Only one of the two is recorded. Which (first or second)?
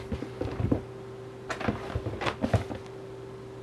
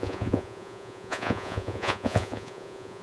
first